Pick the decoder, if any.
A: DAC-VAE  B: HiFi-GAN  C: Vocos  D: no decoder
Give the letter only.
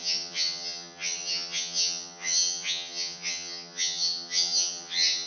B